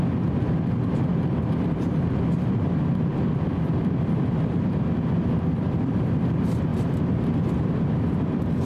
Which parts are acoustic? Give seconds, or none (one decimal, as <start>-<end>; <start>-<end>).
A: 0.0-1.1; 6.2-8.7